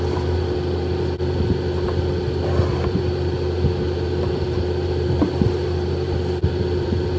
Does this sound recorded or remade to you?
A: recorded